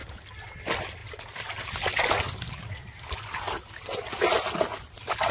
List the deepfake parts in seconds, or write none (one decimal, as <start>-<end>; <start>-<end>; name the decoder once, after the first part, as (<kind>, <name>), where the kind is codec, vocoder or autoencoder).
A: none